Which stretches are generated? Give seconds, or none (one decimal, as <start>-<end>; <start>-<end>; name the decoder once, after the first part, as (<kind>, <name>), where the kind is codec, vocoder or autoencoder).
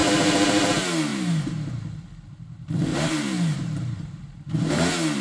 0.0-0.7 (vocoder, BigVGAN v2); 1.1-1.7; 2.9-4.7